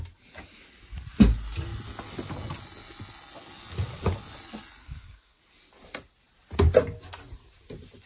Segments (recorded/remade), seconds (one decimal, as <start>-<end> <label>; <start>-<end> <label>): 0.0-4.8 recorded; 4.8-5.4 remade; 5.4-8.1 recorded